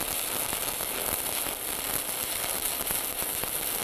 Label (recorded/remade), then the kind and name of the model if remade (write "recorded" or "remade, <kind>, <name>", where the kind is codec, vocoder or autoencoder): recorded